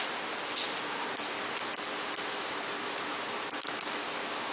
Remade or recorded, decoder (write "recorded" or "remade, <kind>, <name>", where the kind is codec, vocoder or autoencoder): recorded